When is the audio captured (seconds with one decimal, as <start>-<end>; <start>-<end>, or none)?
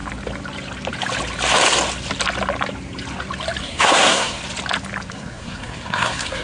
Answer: 0.0-3.6; 4.4-5.1